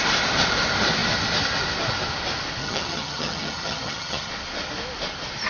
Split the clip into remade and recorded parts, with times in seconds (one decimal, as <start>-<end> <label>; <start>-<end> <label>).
0.0-2.6 recorded; 2.6-4.3 remade; 4.3-5.5 recorded